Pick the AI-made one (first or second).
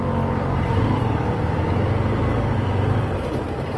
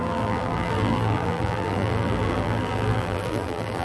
second